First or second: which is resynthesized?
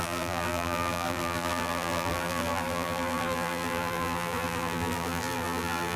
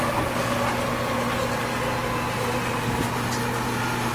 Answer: first